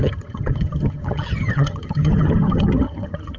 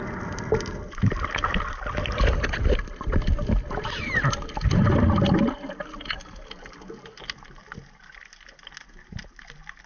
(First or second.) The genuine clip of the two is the second